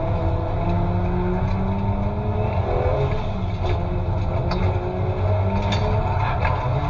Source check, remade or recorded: recorded